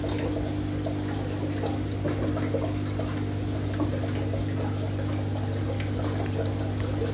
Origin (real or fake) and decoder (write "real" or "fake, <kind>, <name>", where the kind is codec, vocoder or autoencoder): real